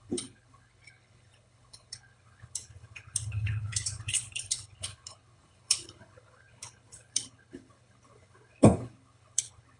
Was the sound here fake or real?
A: fake